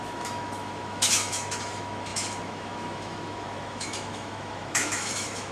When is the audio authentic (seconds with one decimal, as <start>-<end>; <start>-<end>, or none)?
none